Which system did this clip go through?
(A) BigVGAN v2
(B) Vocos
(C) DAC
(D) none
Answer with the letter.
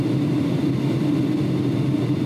D